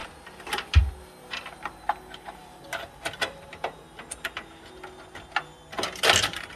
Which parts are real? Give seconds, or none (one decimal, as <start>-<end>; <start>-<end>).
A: 0.9-2.4; 3.5-6.6